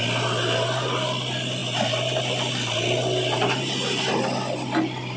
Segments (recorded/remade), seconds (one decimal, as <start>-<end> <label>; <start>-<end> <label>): 0.0-5.2 recorded